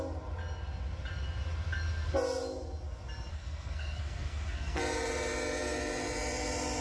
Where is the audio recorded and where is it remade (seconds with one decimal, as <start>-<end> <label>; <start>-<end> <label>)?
0.0-3.3 recorded; 3.3-4.8 remade; 4.8-6.8 recorded